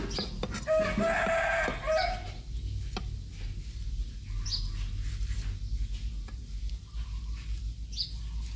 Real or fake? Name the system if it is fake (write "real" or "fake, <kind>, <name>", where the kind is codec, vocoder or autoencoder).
real